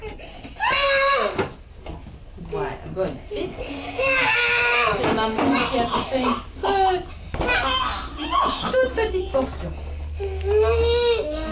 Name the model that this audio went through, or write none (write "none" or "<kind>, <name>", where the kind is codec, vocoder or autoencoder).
none